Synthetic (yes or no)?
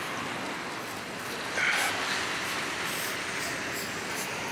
no